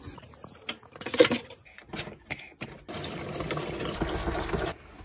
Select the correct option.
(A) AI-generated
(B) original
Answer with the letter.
B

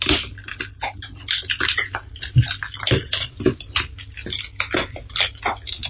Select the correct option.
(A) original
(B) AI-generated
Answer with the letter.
A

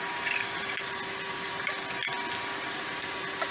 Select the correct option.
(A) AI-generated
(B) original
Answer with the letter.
B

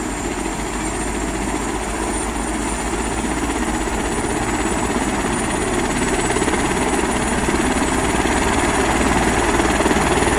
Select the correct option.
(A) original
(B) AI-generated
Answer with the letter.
A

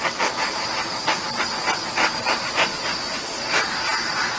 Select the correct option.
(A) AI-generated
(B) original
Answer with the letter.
B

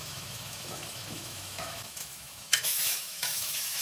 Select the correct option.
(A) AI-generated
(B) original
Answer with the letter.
A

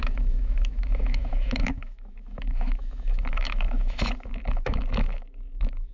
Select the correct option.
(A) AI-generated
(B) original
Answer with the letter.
A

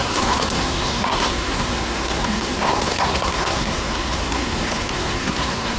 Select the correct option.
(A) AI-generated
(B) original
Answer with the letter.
A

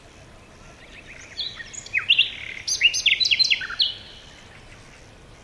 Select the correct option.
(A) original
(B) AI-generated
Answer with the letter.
A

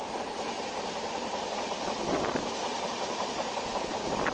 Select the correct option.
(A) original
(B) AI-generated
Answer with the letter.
B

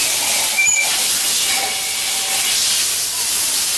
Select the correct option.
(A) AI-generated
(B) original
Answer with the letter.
B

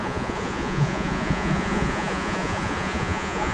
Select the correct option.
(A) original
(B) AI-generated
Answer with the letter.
B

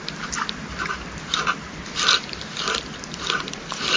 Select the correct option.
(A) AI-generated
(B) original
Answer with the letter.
B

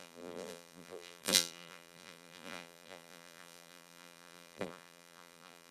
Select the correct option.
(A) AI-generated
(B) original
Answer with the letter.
A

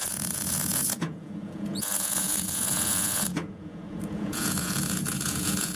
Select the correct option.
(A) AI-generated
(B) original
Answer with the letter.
A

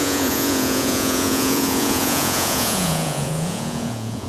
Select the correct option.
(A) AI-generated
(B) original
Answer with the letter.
A